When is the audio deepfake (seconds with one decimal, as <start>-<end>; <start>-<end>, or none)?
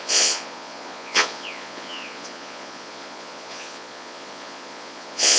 0.0-5.4